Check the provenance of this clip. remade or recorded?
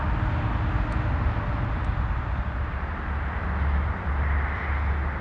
recorded